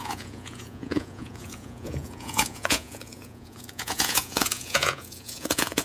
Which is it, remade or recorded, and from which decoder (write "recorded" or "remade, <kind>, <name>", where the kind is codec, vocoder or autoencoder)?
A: remade, vocoder, Vocos